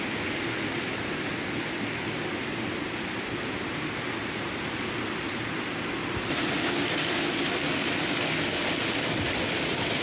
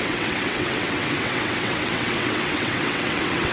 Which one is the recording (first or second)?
first